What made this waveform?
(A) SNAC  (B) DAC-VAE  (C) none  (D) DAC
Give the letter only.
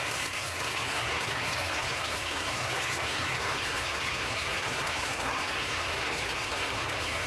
A